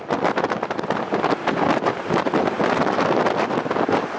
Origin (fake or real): real